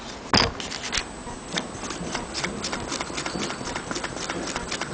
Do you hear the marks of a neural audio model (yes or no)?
no